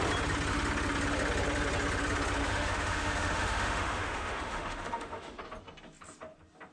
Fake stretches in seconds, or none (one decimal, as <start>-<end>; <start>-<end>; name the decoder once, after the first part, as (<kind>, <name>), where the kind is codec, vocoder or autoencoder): 2.4-5.4 (autoencoder, DAC-VAE)